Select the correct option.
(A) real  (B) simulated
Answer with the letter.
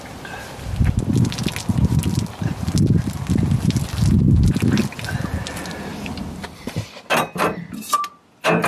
A